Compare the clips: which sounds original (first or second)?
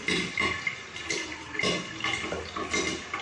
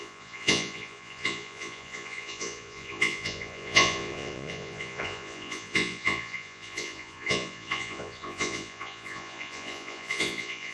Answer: first